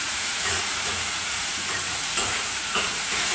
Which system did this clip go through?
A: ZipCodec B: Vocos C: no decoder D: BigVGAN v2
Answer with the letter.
B